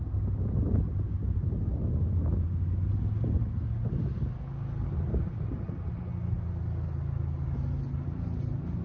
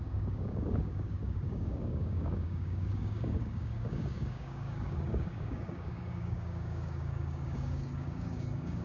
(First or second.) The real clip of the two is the first